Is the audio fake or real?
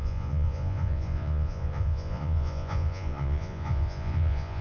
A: fake